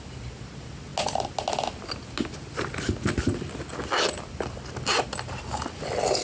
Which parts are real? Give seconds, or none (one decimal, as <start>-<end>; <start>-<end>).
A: 0.0-6.2